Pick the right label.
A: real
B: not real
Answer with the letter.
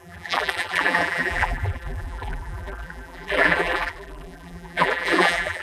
B